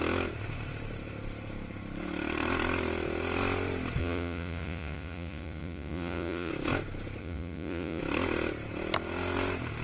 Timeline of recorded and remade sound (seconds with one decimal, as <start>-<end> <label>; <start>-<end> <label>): 0.0-4.0 recorded; 4.0-6.5 remade; 6.5-7.2 recorded; 7.2-8.0 remade; 8.0-9.8 recorded